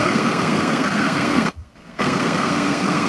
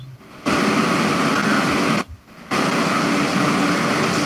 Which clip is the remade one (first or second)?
first